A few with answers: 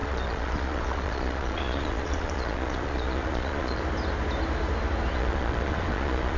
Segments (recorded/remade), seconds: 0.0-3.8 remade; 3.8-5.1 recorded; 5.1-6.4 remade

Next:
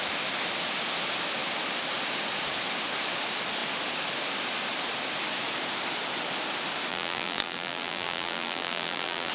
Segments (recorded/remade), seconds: 0.0-6.9 recorded; 6.9-9.3 remade

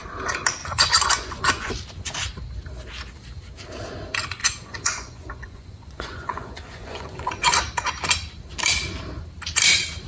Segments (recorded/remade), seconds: 0.0-0.6 recorded; 0.6-1.7 remade; 1.7-4.4 recorded; 4.4-7.3 remade; 7.3-10.1 recorded

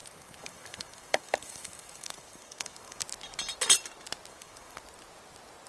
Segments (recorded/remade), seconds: 0.0-3.0 remade; 3.0-4.3 recorded; 4.3-4.8 remade; 4.8-5.7 recorded

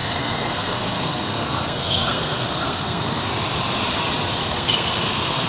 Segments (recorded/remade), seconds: 0.0-3.3 remade; 3.3-4.4 recorded; 4.4-5.5 remade

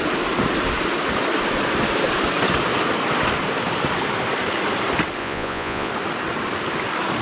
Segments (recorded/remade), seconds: 0.0-5.2 recorded; 5.2-5.9 remade; 5.9-7.2 recorded

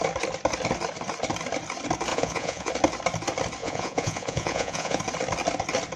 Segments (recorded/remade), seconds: 0.0-2.1 recorded; 2.1-2.7 remade; 2.7-3.6 recorded; 3.6-5.0 remade; 5.0-6.0 recorded